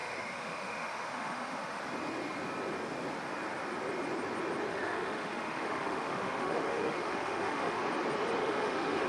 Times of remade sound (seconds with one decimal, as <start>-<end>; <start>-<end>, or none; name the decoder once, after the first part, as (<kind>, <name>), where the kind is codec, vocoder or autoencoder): 0.0-1.8 (autoencoder, DAC-VAE); 4.7-7.8; 8.4-9.1